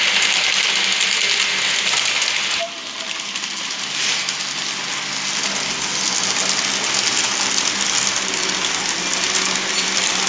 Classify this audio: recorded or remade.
recorded